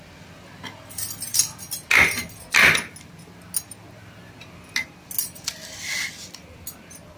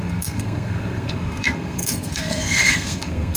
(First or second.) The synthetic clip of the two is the second